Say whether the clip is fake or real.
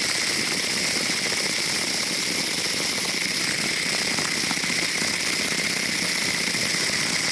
real